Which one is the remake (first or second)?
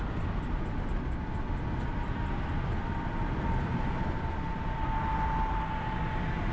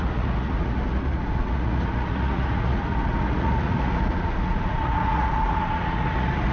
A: second